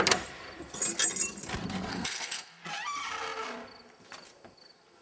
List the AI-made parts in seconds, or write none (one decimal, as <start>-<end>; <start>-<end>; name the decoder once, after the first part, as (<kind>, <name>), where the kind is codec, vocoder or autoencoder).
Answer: 1.9-2.6 (codec, SNAC)